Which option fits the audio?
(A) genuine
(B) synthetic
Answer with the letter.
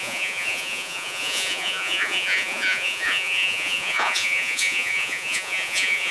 B